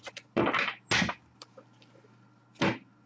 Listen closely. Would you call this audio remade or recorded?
recorded